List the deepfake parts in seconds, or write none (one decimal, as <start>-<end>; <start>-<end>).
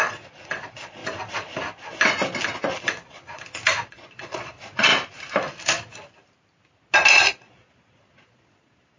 0.0-1.0; 2.8-3.4; 3.9-4.9; 7.3-9.0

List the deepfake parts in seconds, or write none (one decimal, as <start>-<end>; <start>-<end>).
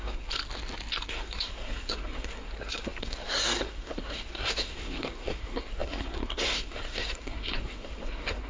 0.0-0.4; 1.1-8.5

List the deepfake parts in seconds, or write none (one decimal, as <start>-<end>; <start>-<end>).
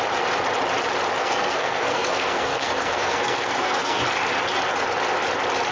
1.2-4.0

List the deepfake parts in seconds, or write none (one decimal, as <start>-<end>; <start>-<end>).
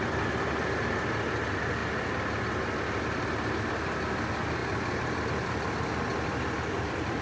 none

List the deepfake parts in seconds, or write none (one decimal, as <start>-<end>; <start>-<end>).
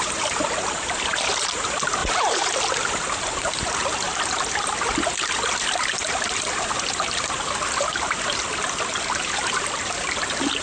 2.0-2.5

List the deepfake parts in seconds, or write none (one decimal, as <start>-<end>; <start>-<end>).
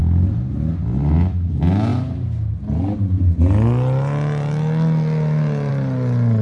none